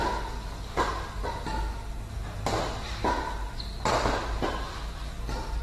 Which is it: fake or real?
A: real